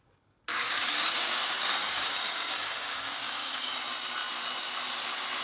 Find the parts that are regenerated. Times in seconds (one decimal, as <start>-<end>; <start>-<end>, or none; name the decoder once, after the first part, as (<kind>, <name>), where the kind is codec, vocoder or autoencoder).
0.5-3.7 (codec, DAC)